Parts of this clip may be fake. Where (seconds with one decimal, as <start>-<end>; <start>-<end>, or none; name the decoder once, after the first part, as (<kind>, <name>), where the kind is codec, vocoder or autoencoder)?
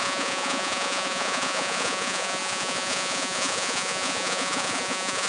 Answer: 0.0-5.3 (vocoder, Vocos)